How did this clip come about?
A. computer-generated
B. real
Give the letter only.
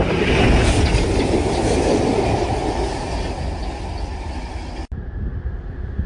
B